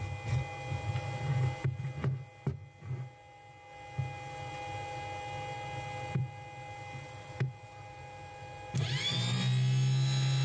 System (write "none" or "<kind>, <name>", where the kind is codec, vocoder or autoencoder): none